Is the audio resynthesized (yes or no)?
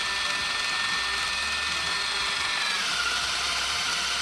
no